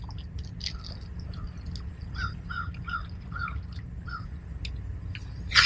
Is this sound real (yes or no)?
yes